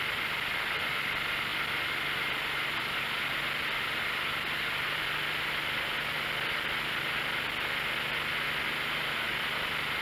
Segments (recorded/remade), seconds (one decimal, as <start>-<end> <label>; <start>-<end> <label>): 0.0-10.0 recorded